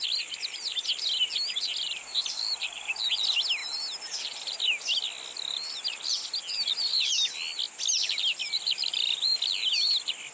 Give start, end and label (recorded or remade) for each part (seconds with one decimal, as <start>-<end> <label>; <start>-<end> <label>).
0.0-10.3 recorded